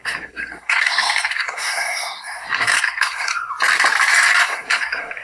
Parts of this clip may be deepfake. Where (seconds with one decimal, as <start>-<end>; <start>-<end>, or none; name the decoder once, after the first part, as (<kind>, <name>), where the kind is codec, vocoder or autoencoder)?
0.0-3.5 (codec, SNAC); 4.4-5.2